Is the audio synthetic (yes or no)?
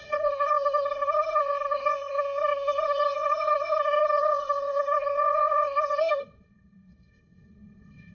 yes